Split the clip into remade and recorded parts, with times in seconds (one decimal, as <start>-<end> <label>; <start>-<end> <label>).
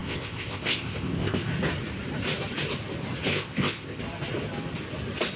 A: 0.0-1.5 remade; 1.5-3.3 recorded; 3.3-4.0 remade; 4.0-5.4 recorded